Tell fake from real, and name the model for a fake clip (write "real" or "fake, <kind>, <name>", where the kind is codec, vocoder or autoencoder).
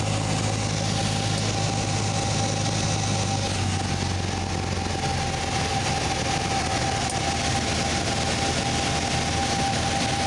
real